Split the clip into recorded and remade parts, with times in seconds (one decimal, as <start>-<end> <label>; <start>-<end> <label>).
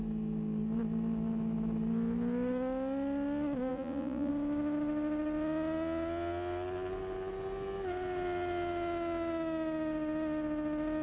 0.0-3.7 recorded; 3.7-4.3 remade; 4.3-11.0 recorded